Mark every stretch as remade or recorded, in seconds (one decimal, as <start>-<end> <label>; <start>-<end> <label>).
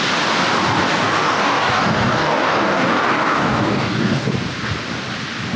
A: 0.0-0.9 recorded; 0.9-4.3 remade; 4.3-5.6 recorded